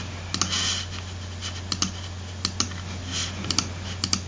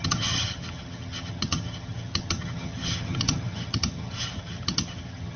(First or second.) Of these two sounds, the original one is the first